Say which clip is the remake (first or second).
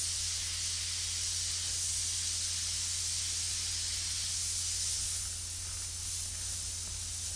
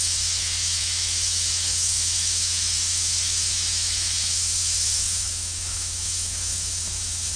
second